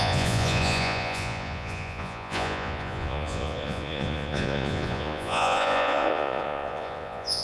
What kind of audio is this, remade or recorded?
remade